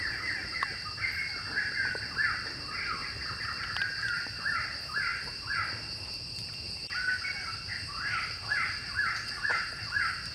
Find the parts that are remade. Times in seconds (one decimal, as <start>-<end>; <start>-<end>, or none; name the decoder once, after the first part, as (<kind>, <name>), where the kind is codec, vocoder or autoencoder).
0.0-0.4 (vocoder, BigVGAN v2); 4.5-5.1